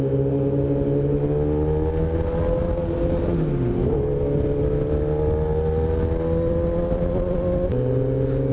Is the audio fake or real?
real